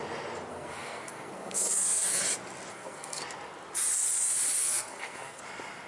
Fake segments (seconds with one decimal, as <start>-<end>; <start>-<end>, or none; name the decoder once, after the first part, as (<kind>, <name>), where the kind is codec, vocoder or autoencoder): 0.5-2.2 (codec, SNAC); 2.7-3.2; 4.6-5.4